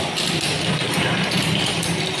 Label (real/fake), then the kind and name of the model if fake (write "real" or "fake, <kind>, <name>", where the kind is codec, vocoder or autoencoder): real